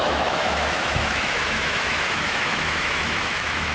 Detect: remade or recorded remade